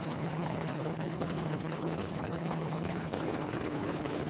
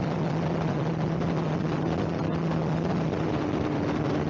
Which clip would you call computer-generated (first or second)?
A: first